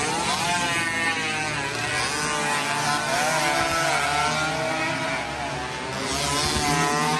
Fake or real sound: real